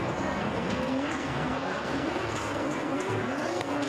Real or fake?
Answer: fake